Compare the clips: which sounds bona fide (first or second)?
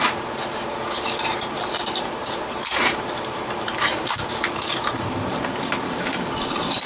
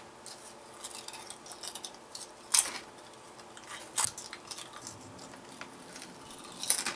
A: second